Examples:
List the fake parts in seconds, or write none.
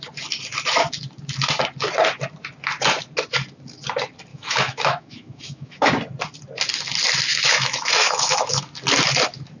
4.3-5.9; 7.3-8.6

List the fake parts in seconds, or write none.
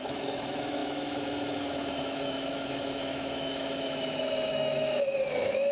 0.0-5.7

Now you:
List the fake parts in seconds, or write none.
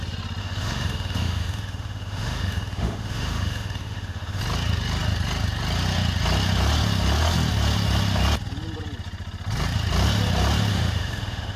0.4-4.4; 10.7-11.6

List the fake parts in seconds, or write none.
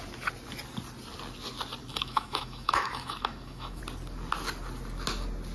1.9-3.8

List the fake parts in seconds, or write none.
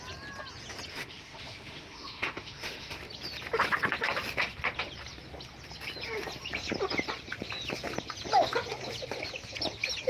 0.9-3.0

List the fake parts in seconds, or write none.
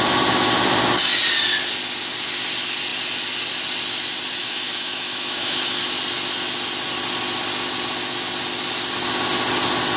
4.4-5.8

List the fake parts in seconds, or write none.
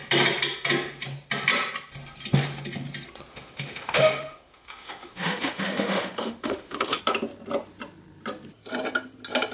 3.3-7.0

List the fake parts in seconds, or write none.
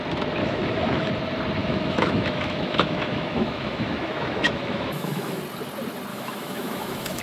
0.4-1.1; 1.6-5.4; 6.1-7.2